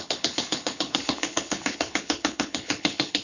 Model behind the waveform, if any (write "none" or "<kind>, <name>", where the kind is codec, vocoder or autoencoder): codec, HILCodec